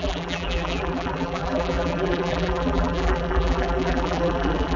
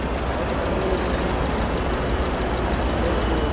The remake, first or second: first